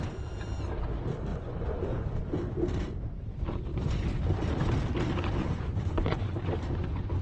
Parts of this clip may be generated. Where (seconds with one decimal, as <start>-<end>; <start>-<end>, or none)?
1.3-2.4; 3.7-4.2; 5.4-6.4